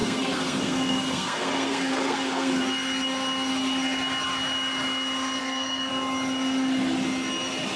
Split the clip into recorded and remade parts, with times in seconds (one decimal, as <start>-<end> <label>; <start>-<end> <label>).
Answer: 0.0-2.6 remade; 2.6-5.4 recorded; 5.4-5.9 remade; 5.9-7.8 recorded